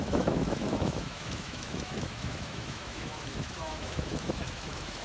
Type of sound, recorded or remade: remade